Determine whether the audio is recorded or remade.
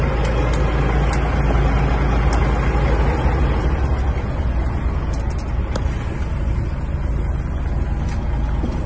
recorded